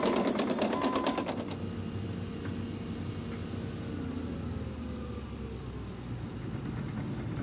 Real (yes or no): yes